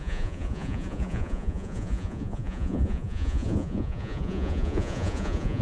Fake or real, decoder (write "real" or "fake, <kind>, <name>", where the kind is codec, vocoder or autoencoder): fake, vocoder, Vocos